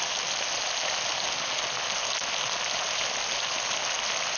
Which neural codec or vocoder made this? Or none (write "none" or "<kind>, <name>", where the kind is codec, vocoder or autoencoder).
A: none